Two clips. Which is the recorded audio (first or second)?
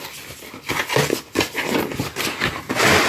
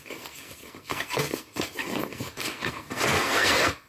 first